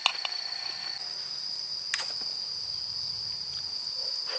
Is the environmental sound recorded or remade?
recorded